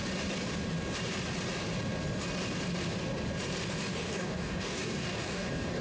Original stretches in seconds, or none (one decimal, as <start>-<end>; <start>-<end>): 0.0-3.9